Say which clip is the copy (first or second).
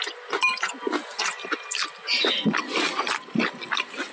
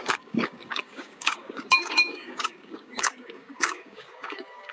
second